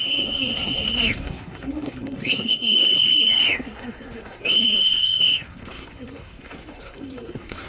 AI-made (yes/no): yes